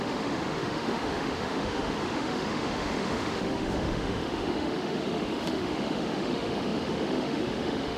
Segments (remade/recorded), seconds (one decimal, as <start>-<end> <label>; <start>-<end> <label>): 0.0-8.0 remade